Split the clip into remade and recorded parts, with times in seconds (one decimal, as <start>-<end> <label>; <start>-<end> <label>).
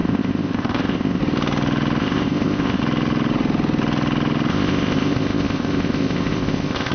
0.0-1.2 remade; 1.2-2.0 recorded; 2.0-2.8 remade; 2.8-4.5 recorded; 4.5-6.9 remade